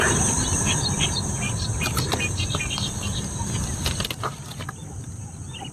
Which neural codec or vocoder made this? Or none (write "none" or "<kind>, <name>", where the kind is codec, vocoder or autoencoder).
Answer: none